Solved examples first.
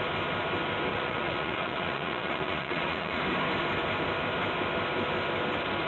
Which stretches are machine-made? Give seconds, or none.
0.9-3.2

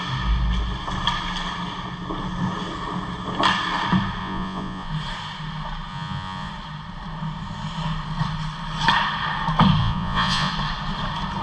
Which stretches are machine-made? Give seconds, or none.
4.2-4.9; 5.9-6.5; 9.8-10.5

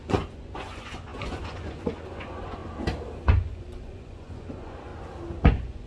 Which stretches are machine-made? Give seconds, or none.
0.0-2.6; 3.2-4.9; 5.4-5.9

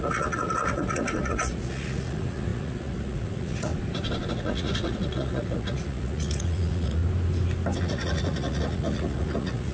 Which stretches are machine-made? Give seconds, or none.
0.0-3.7; 4.3-7.0; 7.8-9.7

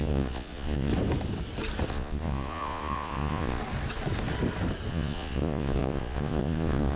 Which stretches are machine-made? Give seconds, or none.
0.0-0.9; 1.9-3.6; 4.9-7.0